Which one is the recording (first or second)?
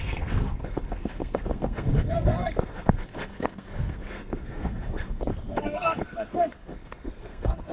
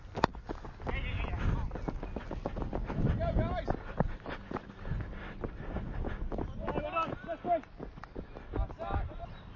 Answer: second